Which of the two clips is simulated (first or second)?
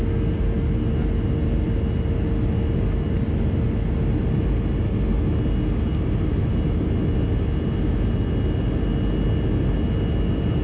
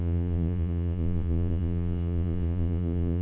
second